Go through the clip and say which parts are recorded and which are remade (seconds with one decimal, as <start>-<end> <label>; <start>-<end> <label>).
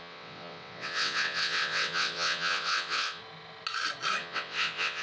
0.0-3.2 remade; 3.2-4.2 recorded; 4.2-5.0 remade